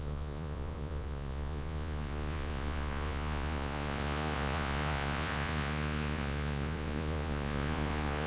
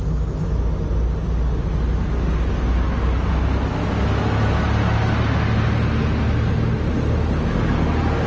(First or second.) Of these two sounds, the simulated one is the first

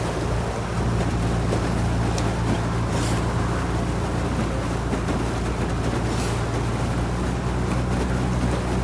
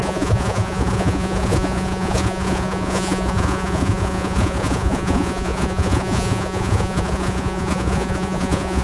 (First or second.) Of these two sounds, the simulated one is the second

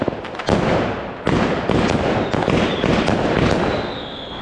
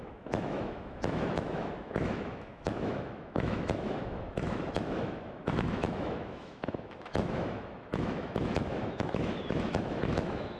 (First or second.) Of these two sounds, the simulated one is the second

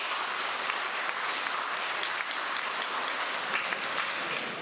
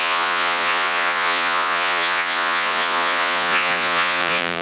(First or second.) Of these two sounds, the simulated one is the second